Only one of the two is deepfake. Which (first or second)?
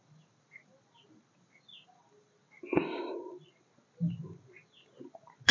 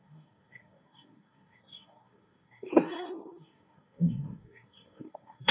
second